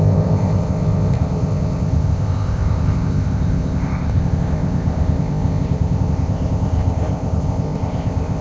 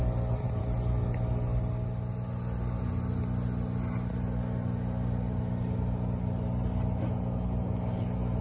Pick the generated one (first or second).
first